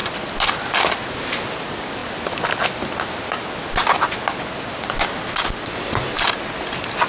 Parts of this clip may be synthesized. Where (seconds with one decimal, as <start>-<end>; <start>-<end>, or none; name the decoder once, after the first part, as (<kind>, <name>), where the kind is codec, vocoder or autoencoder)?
none